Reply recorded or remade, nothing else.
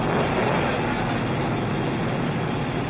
recorded